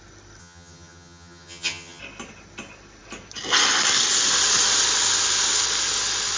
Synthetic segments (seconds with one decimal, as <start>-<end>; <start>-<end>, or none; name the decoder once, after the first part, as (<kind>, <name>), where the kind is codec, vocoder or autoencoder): 0.4-2.0 (vocoder, HiFi-GAN)